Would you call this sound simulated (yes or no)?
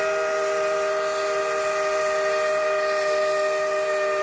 no